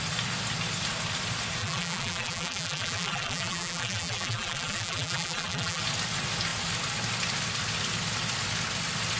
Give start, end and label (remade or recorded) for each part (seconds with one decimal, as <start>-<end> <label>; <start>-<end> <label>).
0.0-1.6 recorded; 1.6-5.8 remade; 5.8-9.2 recorded